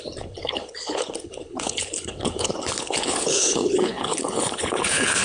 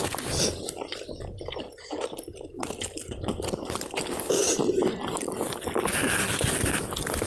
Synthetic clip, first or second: first